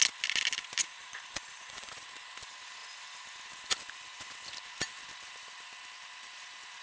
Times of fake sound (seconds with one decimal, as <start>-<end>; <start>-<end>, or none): 0.8-1.9